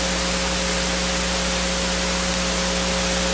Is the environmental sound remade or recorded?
recorded